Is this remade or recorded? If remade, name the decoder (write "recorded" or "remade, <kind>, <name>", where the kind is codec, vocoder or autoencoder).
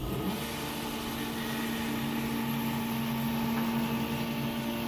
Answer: recorded